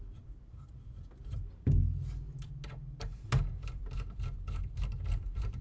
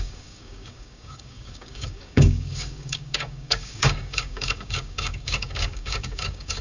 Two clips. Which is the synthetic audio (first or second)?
second